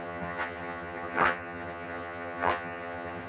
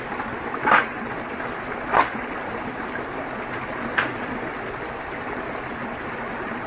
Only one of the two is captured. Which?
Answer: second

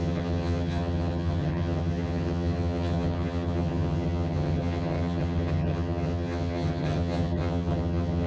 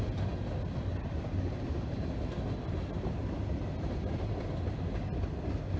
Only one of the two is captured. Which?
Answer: second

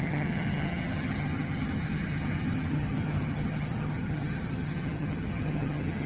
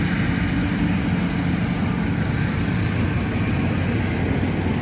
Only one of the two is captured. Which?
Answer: second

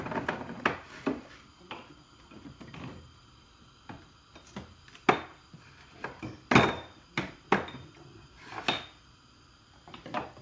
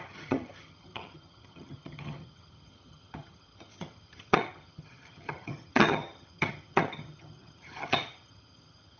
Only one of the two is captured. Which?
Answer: first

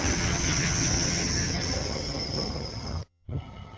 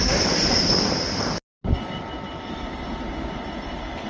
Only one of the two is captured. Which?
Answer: second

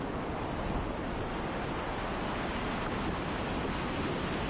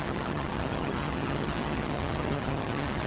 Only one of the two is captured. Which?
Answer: first